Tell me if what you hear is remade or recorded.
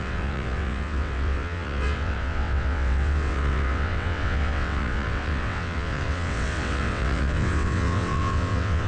remade